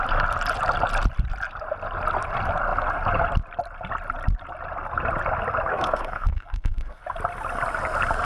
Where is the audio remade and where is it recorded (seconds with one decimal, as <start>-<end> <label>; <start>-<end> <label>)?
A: 0.0-5.7 recorded; 5.7-7.0 remade; 7.0-8.2 recorded

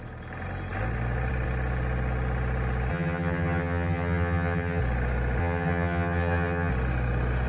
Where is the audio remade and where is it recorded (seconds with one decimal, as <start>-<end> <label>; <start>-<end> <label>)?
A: 0.0-2.9 recorded; 2.9-4.8 remade; 4.8-5.4 recorded; 5.4-6.7 remade; 6.7-7.5 recorded